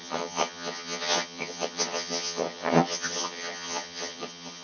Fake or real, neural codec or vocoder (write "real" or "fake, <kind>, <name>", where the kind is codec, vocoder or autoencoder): fake, vocoder, HiFi-GAN